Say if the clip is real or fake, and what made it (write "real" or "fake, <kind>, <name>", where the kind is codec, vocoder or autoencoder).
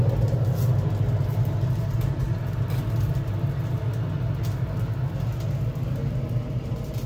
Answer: real